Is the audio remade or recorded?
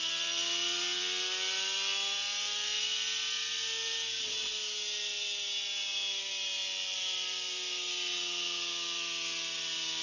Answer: recorded